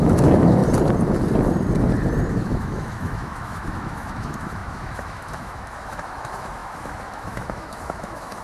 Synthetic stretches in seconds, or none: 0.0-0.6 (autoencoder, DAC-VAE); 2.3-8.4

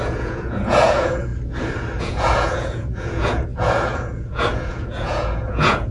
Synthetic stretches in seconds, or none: 0.0-1.3 (vocoder, Vocos); 2.0-5.9